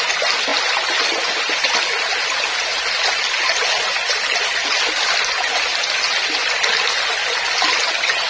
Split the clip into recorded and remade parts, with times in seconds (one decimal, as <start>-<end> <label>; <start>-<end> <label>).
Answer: 0.0-8.3 recorded